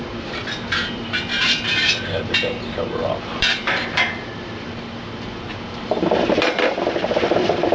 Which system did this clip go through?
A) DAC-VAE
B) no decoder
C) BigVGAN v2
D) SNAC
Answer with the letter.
C